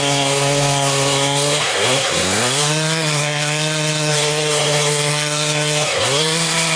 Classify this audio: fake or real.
fake